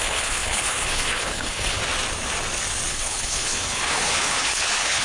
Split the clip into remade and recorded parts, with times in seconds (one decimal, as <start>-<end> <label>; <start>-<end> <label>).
0.0-1.8 remade; 1.8-2.9 recorded; 2.9-5.0 remade